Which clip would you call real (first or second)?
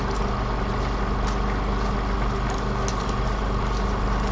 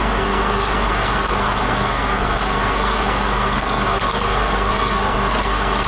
first